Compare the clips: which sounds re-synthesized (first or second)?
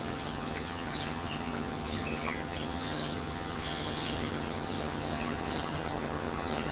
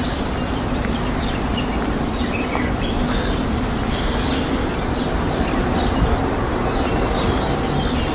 first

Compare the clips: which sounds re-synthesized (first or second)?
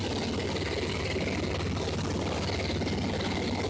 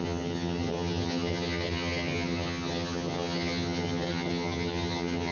second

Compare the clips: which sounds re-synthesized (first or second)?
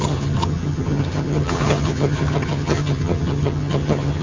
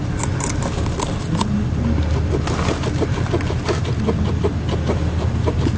first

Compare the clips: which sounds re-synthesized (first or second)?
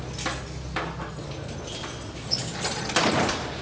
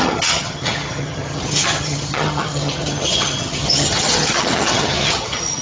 second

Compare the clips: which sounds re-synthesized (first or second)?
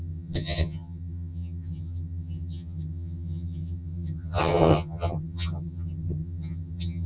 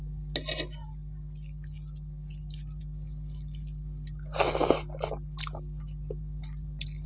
first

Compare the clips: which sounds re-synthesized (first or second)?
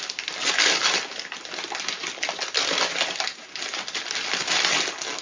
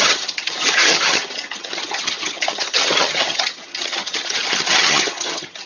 second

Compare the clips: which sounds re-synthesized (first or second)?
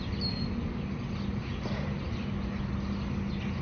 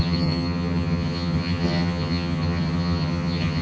second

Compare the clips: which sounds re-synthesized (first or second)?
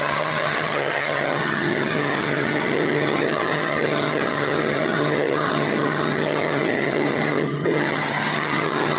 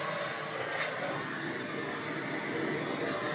first